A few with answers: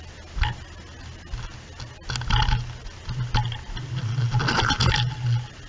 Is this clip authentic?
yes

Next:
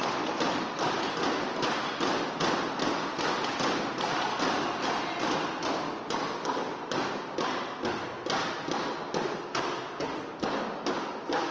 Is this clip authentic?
yes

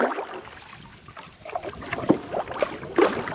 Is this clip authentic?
no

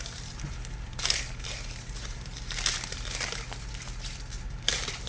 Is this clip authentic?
yes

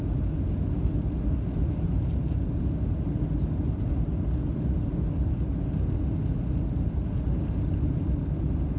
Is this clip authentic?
yes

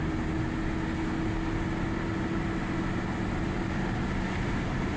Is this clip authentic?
yes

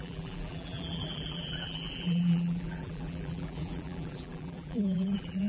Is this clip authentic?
no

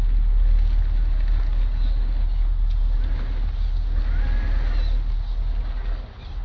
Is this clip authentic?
yes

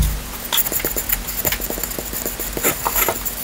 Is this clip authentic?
yes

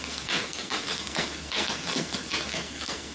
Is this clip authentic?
no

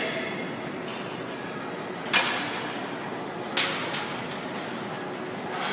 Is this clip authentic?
yes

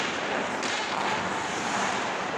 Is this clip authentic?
yes